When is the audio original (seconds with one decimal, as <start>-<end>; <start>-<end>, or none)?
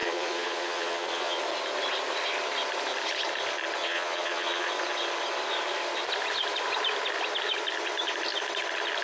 1.4-3.8; 4.7-9.0